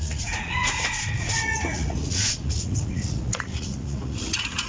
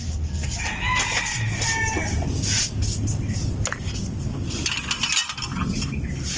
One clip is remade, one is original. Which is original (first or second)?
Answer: second